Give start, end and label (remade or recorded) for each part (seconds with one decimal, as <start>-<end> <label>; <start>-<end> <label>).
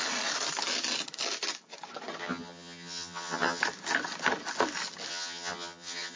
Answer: 0.0-2.2 recorded; 2.2-3.6 remade; 3.6-5.1 recorded; 5.1-6.2 remade